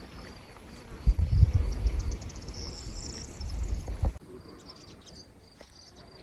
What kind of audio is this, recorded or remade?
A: recorded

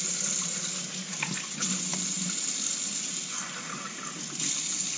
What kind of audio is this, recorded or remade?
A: recorded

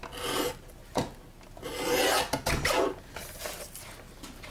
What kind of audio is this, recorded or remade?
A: recorded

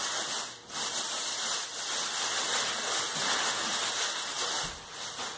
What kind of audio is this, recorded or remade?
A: recorded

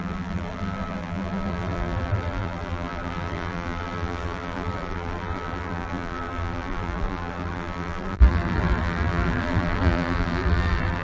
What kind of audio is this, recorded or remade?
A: remade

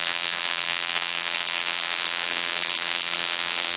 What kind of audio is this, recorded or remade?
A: remade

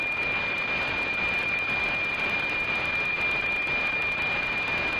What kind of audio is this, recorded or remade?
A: remade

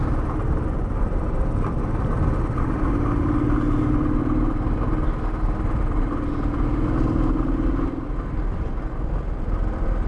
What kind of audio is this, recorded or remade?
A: recorded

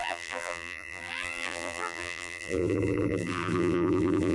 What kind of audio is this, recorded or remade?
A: remade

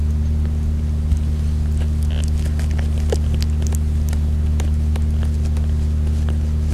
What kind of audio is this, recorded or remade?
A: recorded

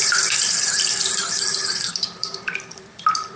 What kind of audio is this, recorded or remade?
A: remade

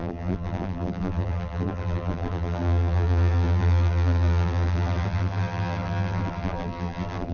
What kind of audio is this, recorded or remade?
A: remade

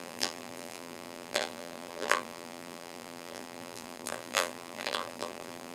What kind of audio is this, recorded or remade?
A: remade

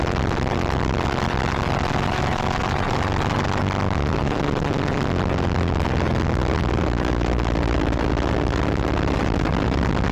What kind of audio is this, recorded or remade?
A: remade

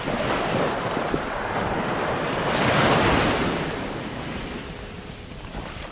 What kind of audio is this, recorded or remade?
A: remade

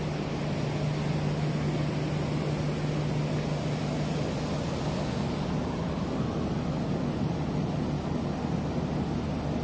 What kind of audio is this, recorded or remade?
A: recorded